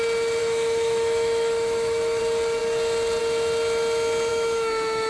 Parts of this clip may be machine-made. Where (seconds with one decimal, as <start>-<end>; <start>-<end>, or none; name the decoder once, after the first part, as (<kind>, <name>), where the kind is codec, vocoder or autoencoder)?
0.4-2.2 (autoencoder, DAC-VAE); 4.3-5.1